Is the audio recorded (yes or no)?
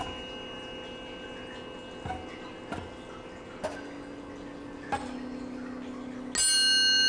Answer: yes